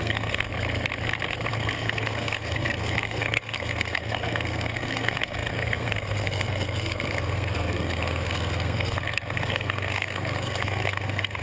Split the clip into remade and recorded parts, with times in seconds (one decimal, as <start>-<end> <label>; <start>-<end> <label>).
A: 0.0-0.5 remade; 0.5-1.5 recorded; 1.5-11.4 remade